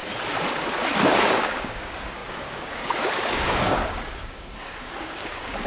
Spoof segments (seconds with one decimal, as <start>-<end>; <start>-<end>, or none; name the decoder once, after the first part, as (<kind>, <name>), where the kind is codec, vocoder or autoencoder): 1.0-5.7 (codec, DAC)